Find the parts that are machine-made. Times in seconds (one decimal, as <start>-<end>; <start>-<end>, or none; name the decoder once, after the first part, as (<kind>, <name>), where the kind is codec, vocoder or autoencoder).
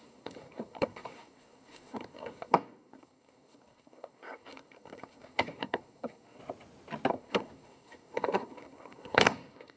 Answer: 0.0-6.4 (codec, SNAC); 7.1-9.8